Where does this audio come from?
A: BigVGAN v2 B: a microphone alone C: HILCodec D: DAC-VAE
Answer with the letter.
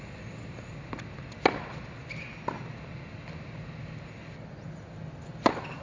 B